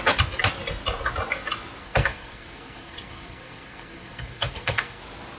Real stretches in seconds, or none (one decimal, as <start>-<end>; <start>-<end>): 0.0-1.8; 5.0-5.4